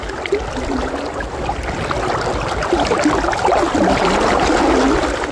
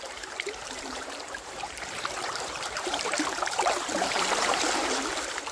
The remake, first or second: second